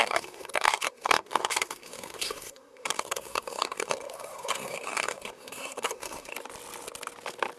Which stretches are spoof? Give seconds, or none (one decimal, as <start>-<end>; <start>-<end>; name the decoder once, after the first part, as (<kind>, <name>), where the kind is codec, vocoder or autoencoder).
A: 0.0-6.3 (codec, SNAC)

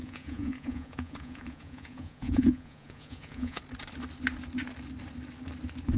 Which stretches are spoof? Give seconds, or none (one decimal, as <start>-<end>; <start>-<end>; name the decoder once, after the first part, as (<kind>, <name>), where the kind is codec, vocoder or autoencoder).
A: 0.0-3.6 (vocoder, Vocos)

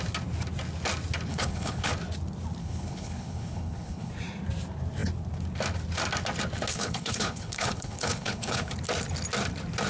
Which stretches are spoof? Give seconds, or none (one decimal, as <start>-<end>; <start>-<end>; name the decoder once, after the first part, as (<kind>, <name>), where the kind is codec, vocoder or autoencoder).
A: 1.3-1.9 (codec, HILCodec); 2.6-4.1; 6.7-8.7